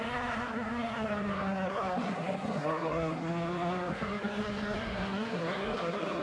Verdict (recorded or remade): remade